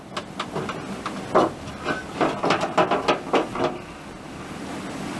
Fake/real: real